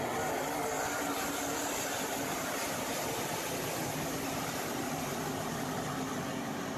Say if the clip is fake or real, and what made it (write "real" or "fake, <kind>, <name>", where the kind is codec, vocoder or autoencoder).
real